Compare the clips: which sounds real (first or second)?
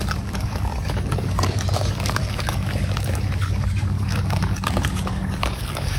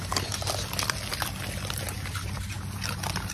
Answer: second